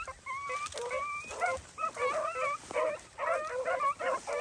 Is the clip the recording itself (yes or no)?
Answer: yes